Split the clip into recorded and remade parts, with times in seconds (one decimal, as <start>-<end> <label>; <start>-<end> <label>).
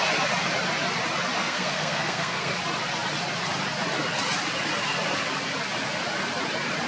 0.0-1.4 recorded; 1.4-2.5 remade; 2.5-6.9 recorded